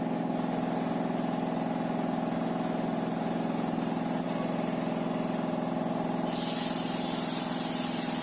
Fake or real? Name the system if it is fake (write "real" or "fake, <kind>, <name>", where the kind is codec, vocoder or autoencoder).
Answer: real